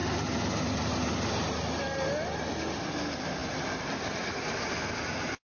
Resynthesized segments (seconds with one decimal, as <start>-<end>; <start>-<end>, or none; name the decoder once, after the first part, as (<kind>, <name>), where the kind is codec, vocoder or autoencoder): none